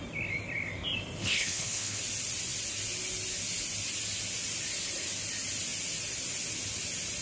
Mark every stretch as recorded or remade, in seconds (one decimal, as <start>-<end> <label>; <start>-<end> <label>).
0.0-1.2 recorded; 1.2-2.0 remade; 2.0-7.2 recorded